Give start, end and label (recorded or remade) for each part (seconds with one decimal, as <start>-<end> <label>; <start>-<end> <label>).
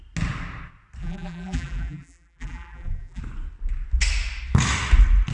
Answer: 0.0-1.0 recorded; 1.0-3.2 remade; 3.2-5.3 recorded